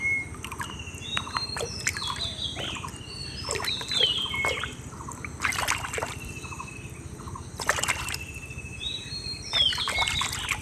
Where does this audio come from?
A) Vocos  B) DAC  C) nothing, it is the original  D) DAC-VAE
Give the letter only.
C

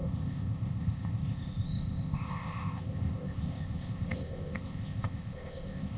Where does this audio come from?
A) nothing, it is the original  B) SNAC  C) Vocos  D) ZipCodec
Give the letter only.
D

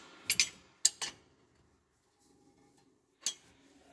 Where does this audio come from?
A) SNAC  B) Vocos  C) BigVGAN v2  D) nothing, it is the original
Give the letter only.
D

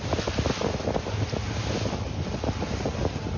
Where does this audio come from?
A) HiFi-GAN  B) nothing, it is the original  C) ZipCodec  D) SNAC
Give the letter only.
B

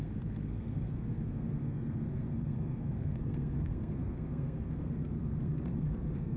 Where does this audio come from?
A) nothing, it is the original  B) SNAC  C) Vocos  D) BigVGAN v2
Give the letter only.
B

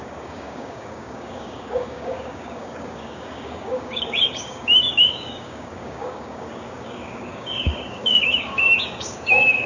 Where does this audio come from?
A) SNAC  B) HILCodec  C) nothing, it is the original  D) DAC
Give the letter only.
D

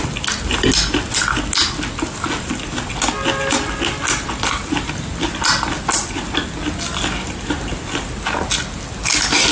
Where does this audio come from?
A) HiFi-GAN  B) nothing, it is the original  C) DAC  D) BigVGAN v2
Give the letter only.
B